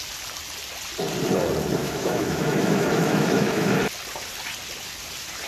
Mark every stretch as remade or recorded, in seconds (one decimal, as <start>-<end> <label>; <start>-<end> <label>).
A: 0.0-1.8 recorded; 1.8-3.8 remade; 3.8-5.5 recorded